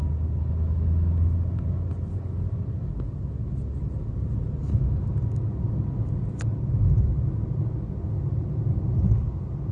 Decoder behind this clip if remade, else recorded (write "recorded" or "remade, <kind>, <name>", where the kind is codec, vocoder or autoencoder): recorded